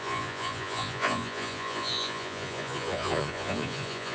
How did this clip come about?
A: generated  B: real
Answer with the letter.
A